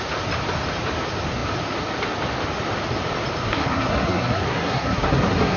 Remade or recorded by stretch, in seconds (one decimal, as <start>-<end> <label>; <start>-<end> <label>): 0.0-3.4 recorded; 3.4-5.6 remade

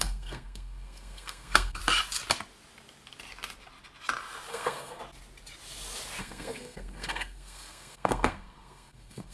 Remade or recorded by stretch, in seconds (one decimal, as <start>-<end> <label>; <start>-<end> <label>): 0.0-1.8 remade; 1.8-4.5 recorded; 4.5-5.0 remade; 5.0-6.2 recorded; 6.2-9.3 remade

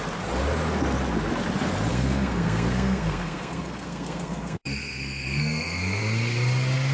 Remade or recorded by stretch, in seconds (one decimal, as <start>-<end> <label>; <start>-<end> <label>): 0.0-1.9 recorded; 1.9-6.0 remade; 6.0-6.9 recorded

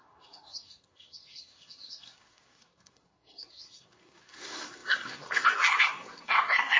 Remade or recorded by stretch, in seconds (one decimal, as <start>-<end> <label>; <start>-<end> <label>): 0.0-6.8 remade

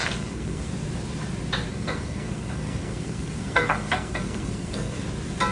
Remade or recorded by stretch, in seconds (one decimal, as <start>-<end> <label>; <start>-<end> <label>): 0.0-0.7 remade; 0.7-1.7 recorded; 1.7-5.0 remade; 5.0-5.5 recorded